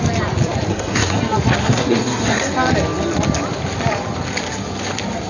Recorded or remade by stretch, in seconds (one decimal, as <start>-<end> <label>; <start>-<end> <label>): 0.0-0.7 recorded; 0.7-1.2 remade; 1.2-1.6 recorded; 1.6-2.5 remade; 2.5-5.3 recorded